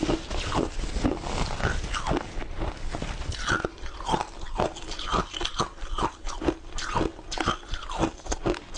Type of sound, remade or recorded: recorded